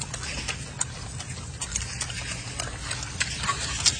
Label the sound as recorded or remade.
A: recorded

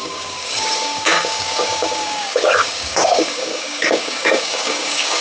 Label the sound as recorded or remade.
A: remade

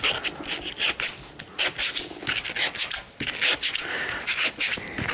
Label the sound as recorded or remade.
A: recorded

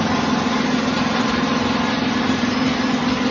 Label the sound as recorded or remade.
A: recorded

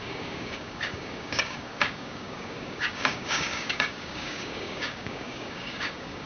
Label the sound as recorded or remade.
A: remade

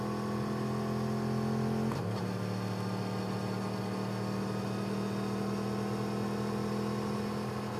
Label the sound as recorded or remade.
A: recorded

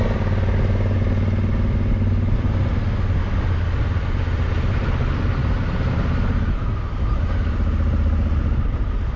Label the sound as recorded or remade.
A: recorded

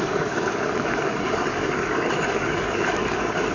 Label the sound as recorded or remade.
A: remade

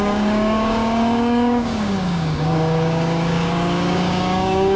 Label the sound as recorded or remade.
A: remade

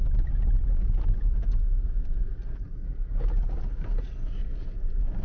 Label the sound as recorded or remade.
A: recorded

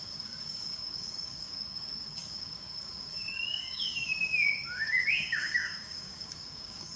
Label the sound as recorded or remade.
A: remade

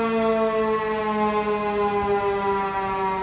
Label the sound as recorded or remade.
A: recorded